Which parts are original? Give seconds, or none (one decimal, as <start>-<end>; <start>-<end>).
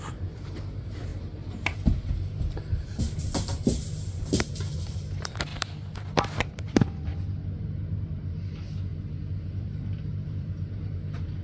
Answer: 5.5-6.4; 7.1-7.6; 8.9-9.6